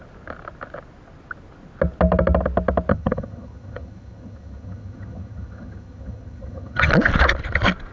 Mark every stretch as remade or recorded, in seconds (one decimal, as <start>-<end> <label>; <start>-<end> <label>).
0.0-2.9 recorded; 2.9-6.9 remade; 6.9-7.9 recorded

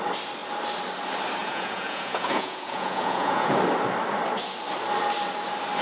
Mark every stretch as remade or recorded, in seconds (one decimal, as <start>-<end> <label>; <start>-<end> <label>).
0.0-1.4 recorded; 1.4-3.5 remade; 3.5-5.8 recorded

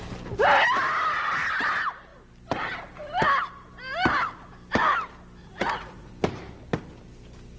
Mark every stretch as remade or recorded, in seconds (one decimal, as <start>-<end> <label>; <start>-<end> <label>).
0.0-5.4 recorded; 5.4-6.1 remade; 6.1-7.6 recorded

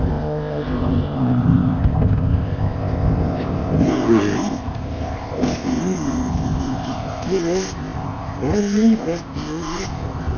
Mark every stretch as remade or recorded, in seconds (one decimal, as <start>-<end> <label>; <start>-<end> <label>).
0.0-10.4 remade

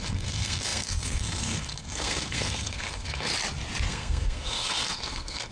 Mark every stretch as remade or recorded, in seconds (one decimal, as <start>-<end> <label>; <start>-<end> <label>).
0.0-3.3 remade; 3.3-3.9 recorded; 3.9-5.5 remade

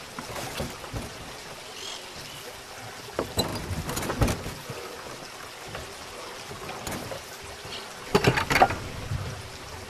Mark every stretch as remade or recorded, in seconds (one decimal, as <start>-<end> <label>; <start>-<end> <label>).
0.0-8.1 recorded; 8.1-9.0 remade; 9.0-9.9 recorded

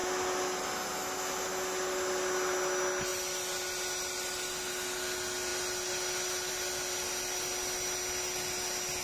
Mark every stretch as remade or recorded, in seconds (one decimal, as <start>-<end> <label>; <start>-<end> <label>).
0.0-9.0 recorded